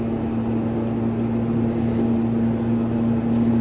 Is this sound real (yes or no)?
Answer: yes